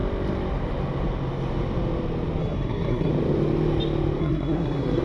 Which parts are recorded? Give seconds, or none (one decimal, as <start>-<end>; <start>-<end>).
0.0-2.4; 3.1-4.2